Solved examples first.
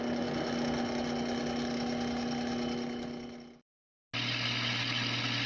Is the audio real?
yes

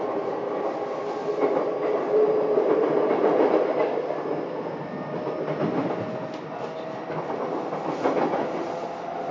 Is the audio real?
yes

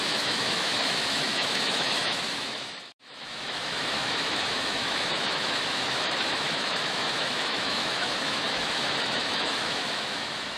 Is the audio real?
no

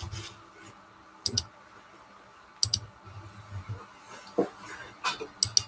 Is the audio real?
yes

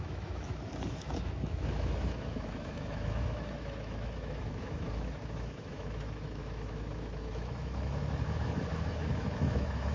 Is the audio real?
no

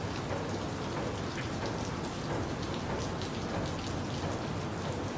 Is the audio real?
yes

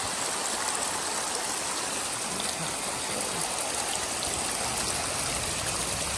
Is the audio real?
yes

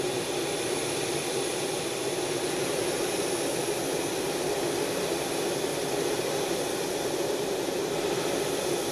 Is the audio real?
yes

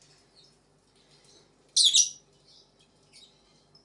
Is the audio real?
yes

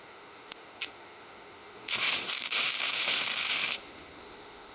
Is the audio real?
no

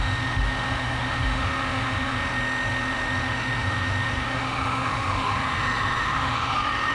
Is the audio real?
no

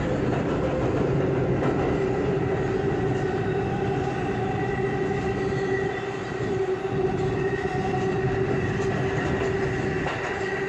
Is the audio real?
yes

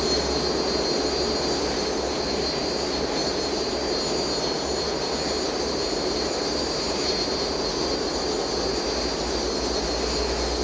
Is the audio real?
yes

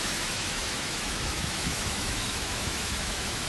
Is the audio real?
no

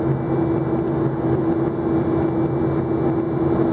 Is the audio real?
yes